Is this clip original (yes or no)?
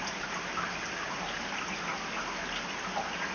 yes